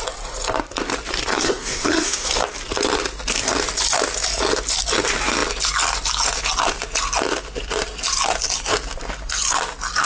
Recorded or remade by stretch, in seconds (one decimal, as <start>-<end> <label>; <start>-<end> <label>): 0.0-1.3 recorded; 1.3-2.3 remade; 2.3-10.1 recorded